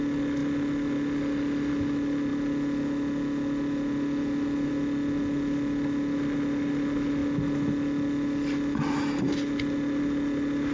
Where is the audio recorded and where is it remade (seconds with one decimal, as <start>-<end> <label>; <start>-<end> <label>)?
0.0-10.7 recorded